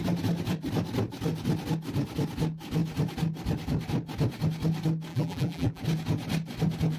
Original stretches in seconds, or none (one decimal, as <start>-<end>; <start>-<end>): 0.0-5.1; 5.8-7.0